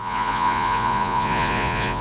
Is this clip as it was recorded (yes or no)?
no